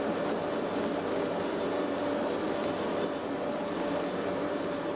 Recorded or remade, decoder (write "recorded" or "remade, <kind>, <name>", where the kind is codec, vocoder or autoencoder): recorded